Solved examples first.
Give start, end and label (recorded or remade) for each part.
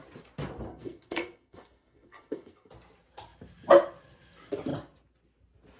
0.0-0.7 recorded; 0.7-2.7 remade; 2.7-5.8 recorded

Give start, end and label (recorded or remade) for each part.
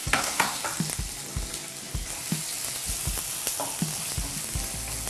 0.0-0.6 remade; 0.6-5.1 recorded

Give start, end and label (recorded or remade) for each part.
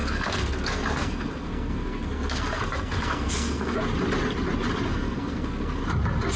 0.0-3.8 remade; 3.8-4.9 recorded; 4.9-5.8 remade; 5.8-6.4 recorded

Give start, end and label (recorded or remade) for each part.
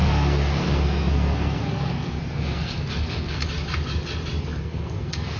0.0-3.4 remade; 3.4-4.4 recorded; 4.4-5.4 remade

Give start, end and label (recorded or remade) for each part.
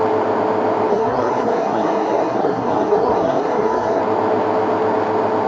0.0-0.9 recorded; 0.9-4.0 remade; 4.0-5.5 recorded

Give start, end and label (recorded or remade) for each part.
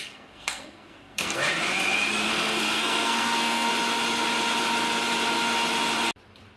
0.0-1.4 remade; 1.4-2.3 recorded; 2.3-3.7 remade; 3.7-6.6 recorded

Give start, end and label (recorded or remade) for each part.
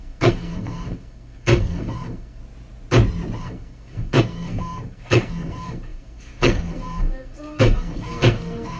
0.0-2.4 remade; 2.4-3.4 recorded; 3.4-8.8 remade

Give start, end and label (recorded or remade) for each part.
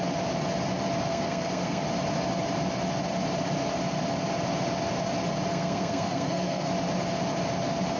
0.0-1.1 recorded; 1.1-1.8 remade; 1.8-5.5 recorded; 5.5-6.7 remade; 6.7-8.0 recorded